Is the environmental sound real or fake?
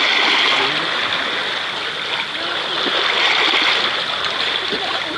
real